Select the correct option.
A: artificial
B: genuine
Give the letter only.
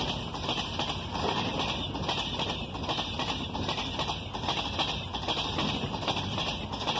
B